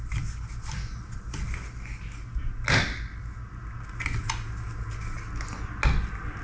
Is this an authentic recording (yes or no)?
yes